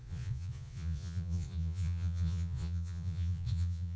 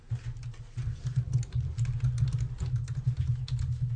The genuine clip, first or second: second